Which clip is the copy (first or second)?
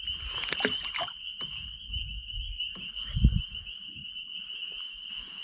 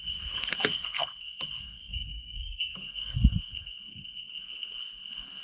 second